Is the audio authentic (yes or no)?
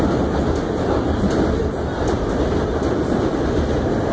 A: yes